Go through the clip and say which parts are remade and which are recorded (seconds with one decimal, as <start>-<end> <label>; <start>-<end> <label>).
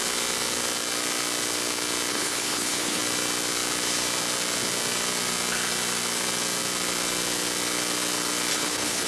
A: 0.0-2.1 recorded; 2.1-3.0 remade; 3.0-8.5 recorded; 8.5-9.1 remade